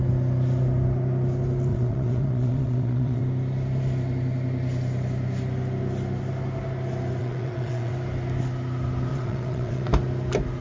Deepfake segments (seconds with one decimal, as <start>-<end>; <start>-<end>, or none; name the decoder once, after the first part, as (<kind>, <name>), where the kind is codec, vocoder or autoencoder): 1.7-3.2 (vocoder, WaveNeXt); 7.2-7.9; 9.1-9.9